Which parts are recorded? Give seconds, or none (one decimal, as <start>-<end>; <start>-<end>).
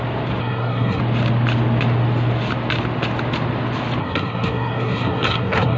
0.0-0.4; 1.0-4.0